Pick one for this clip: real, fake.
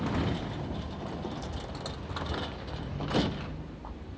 real